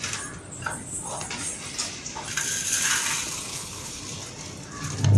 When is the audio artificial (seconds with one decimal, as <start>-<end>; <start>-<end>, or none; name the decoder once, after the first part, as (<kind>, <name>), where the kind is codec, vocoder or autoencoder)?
3.5-4.0 (codec, HILCodec)